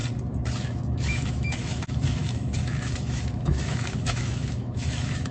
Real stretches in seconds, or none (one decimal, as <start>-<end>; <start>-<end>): 0.0-0.6